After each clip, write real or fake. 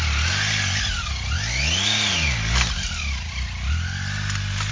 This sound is real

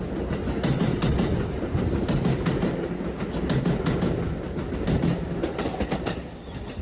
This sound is real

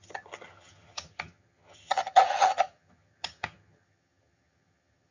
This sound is fake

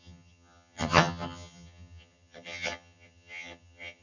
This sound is fake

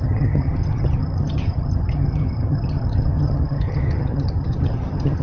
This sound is fake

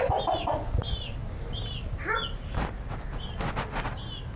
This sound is real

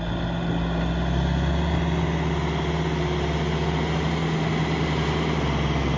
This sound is real